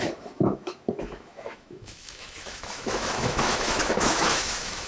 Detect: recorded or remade remade